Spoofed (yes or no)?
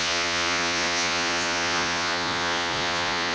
yes